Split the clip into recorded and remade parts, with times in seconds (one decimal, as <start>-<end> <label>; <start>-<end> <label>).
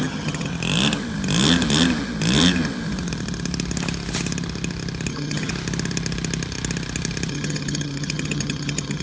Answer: 0.0-0.5 remade; 0.5-5.1 recorded; 5.1-5.5 remade; 5.5-7.3 recorded; 7.3-9.0 remade